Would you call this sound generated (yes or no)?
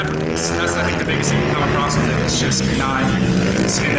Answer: no